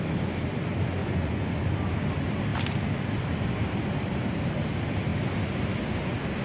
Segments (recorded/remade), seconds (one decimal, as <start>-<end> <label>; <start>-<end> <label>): 0.0-1.0 recorded; 1.0-1.6 remade; 1.6-6.4 recorded

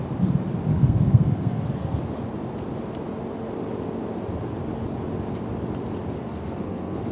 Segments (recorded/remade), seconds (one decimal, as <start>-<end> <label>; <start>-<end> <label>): 0.0-0.7 recorded; 0.7-2.0 remade; 2.0-6.2 recorded; 6.2-7.1 remade

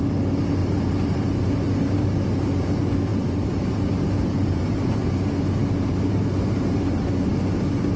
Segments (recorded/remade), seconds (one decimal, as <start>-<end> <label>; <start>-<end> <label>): 0.0-0.6 recorded; 0.6-2.7 remade; 2.7-3.1 recorded; 3.1-5.1 remade; 5.1-5.6 recorded; 5.6-7.3 remade; 7.3-8.0 recorded

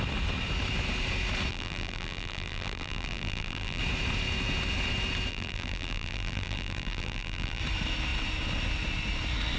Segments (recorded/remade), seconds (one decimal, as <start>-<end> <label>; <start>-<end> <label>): 0.0-1.5 recorded; 1.5-3.8 remade; 3.8-5.3 recorded; 5.3-7.6 remade; 7.6-9.6 recorded

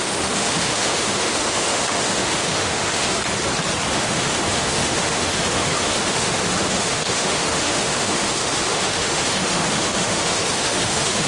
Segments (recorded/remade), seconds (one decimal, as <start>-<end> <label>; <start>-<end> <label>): 0.0-3.2 remade; 3.2-3.9 recorded; 3.9-11.3 remade

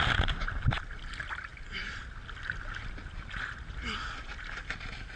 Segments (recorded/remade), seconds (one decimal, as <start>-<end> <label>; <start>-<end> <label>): 0.0-5.2 recorded